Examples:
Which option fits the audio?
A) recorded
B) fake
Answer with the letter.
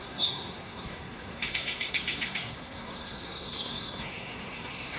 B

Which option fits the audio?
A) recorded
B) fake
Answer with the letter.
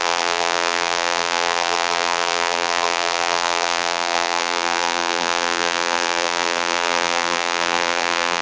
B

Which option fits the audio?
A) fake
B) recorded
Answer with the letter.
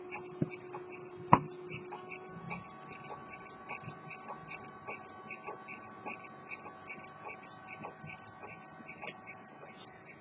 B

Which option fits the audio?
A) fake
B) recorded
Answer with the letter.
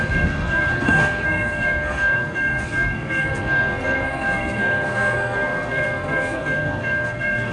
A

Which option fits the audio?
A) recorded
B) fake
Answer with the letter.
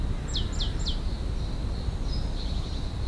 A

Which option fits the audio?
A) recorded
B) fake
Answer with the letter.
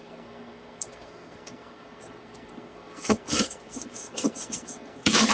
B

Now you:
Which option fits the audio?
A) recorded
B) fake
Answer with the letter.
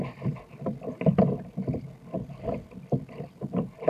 A